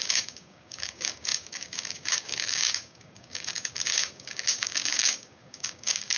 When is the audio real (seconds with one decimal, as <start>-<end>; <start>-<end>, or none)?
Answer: none